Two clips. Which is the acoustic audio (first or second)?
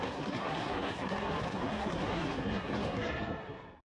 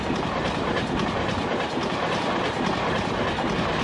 second